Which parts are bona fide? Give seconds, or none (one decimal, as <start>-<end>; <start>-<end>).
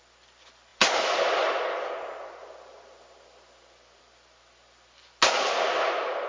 0.0-6.3